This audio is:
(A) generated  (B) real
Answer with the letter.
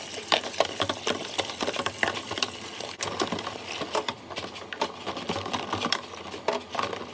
B